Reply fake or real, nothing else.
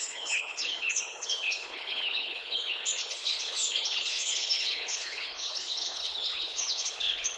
fake